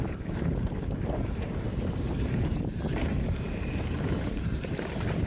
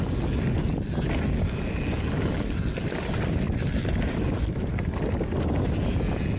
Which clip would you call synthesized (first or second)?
first